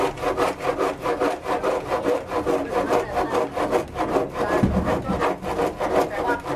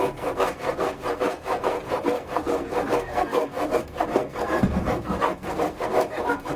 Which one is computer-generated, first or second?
second